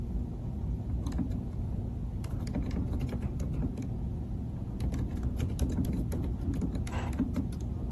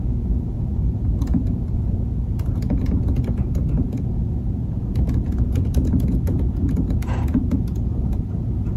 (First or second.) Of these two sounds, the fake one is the second